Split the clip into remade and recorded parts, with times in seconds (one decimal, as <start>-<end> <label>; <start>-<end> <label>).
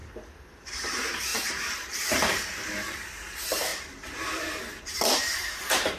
0.0-0.8 recorded; 0.8-6.0 remade